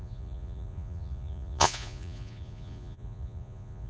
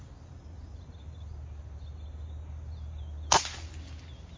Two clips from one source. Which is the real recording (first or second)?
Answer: second